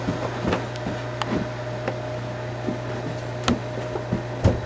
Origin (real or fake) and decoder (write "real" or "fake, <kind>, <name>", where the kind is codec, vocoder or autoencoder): real